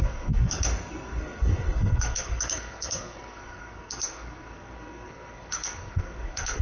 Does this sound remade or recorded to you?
remade